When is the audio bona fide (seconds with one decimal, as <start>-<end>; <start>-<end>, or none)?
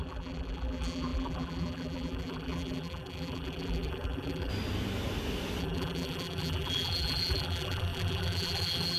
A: 4.5-5.6